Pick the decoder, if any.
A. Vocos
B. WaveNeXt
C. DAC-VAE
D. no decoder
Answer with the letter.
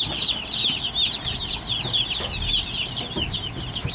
D